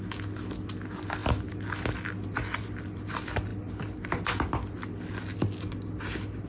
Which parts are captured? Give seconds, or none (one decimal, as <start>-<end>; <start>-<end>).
0.0-6.5